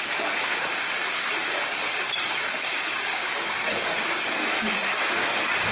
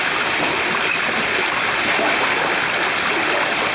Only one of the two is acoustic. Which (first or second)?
second